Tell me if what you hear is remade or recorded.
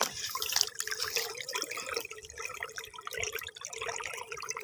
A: remade